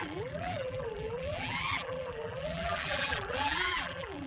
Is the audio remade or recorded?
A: remade